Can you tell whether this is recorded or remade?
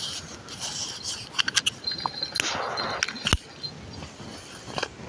recorded